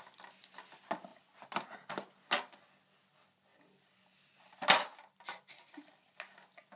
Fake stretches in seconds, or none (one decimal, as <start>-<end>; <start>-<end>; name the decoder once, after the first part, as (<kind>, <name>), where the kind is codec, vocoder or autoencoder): none

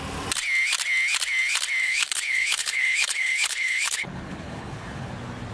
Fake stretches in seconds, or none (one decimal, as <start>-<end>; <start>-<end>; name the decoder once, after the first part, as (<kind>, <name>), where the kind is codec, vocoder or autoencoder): 1.8-5.1 (codec, HILCodec)

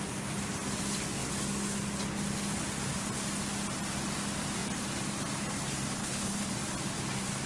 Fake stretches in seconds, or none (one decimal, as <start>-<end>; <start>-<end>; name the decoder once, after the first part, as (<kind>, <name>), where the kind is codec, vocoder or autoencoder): 6.0-6.5 (codec, HILCodec)

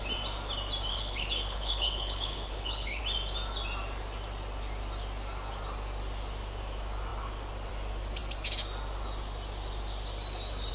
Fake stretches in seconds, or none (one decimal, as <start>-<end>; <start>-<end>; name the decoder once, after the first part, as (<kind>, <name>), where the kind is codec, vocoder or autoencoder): 0.9-3.0 (codec, HILCodec)

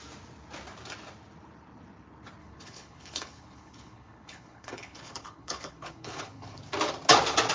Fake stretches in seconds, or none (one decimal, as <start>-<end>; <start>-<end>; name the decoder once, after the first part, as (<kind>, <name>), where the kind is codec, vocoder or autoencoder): 2.4-6.6 (codec, HILCodec)